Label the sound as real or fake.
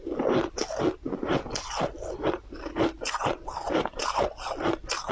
real